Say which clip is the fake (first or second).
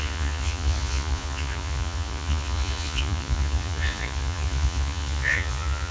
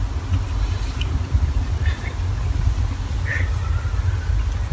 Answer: first